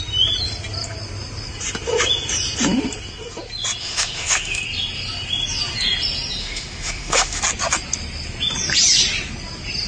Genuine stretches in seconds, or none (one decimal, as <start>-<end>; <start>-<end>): 0.0-3.8; 4.6-6.4; 7.4-9.9